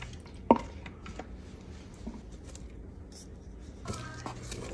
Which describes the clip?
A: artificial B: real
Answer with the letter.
B